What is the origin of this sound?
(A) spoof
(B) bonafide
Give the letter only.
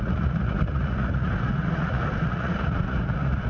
A